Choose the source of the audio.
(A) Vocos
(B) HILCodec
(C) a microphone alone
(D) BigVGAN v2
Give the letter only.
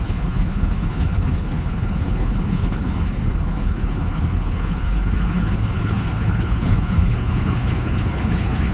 B